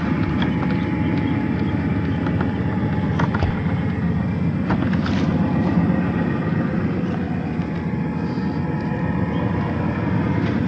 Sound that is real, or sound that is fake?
real